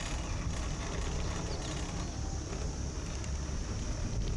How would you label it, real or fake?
real